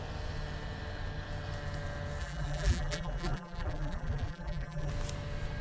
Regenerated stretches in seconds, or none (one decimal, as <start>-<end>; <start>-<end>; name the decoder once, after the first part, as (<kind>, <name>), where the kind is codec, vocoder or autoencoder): 2.2-4.9 (vocoder, BigVGAN v2)